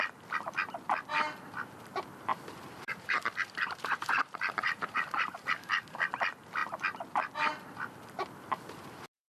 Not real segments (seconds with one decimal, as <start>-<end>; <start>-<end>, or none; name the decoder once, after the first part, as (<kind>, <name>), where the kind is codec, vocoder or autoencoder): 2.3-5.9 (vocoder, BigVGAN v2)